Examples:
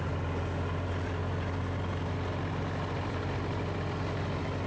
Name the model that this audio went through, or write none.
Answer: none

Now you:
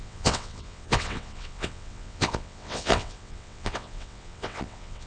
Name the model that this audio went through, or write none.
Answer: vocoder, WaveNeXt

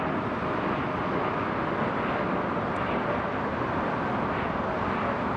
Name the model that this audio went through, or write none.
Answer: none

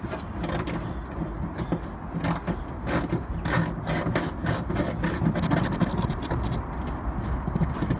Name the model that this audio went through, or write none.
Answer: none